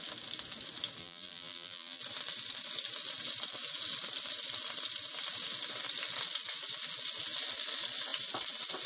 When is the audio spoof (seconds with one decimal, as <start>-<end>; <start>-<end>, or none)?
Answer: 1.0-2.0